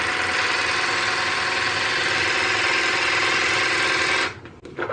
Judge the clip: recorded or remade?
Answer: recorded